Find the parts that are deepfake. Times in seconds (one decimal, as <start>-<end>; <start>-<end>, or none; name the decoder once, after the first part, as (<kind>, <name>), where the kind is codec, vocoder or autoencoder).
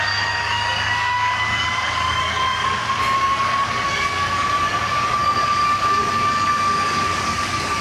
0.0-7.8 (codec, DAC)